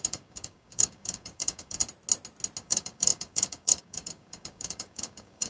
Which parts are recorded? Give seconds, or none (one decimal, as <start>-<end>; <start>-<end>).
1.8-2.6